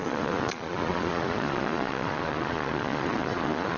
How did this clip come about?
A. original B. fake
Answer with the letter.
B